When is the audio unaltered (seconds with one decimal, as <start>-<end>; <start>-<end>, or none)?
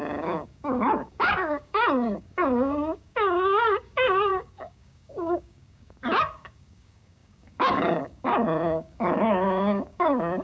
none